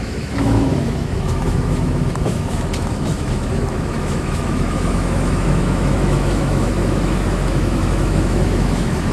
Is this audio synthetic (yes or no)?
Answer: yes